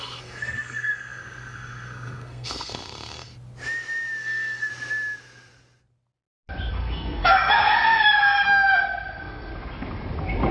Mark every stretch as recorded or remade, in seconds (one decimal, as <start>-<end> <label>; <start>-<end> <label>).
0.0-3.3 remade; 3.3-4.2 recorded; 4.2-4.7 remade; 4.7-6.7 recorded; 6.7-9.5 remade; 9.5-10.5 recorded